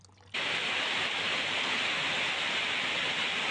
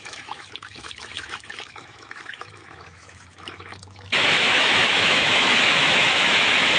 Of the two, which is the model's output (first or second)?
second